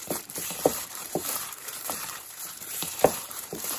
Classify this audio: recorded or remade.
remade